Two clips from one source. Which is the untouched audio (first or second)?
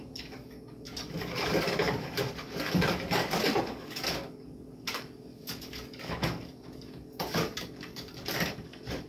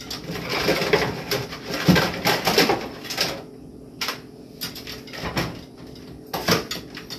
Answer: second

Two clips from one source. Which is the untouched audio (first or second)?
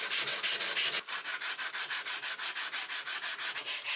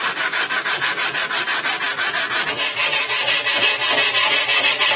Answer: first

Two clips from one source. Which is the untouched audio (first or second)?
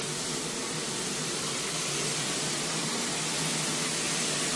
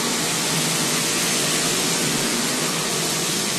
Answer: first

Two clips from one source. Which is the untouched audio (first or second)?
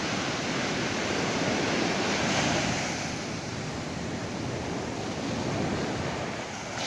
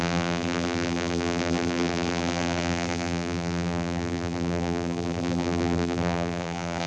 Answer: first